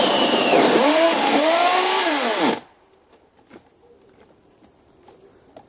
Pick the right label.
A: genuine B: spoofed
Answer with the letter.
B